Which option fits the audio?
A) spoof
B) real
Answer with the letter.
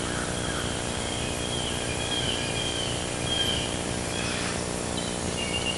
A